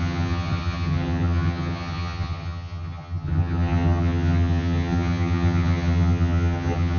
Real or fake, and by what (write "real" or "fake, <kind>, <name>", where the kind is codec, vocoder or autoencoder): fake, vocoder, HiFi-GAN